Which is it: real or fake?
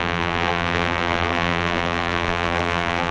fake